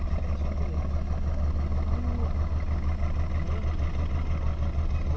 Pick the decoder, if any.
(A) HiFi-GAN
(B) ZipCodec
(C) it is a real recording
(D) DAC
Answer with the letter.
C